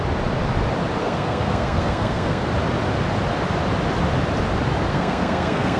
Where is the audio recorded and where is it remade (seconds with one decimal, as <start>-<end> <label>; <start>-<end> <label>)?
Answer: 0.0-1.0 recorded; 1.0-2.5 remade; 2.5-4.9 recorded; 4.9-5.8 remade